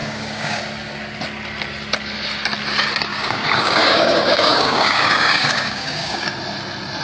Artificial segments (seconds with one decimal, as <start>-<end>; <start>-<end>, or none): 0.0-0.6; 3.1-6.3